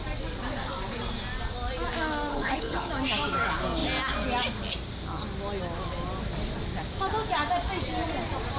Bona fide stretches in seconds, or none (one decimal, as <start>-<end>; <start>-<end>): 0.0-2.3; 2.9-8.6